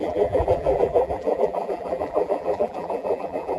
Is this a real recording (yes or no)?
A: no